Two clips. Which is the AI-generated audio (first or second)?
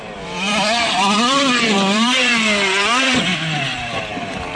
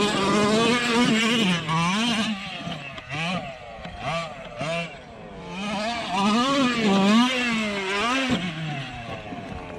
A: first